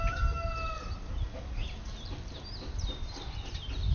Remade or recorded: recorded